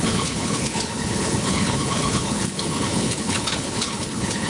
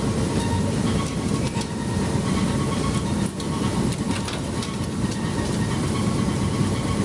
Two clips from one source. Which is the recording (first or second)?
second